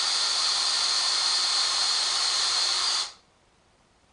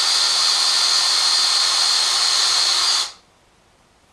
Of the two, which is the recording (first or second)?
second